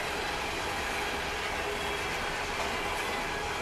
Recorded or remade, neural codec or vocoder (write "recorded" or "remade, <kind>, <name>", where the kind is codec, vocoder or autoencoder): recorded